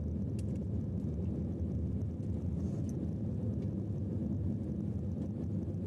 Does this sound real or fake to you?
real